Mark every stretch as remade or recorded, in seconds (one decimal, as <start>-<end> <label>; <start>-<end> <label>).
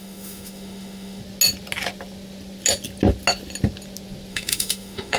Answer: 0.0-1.2 remade; 1.2-4.3 recorded; 4.3-5.2 remade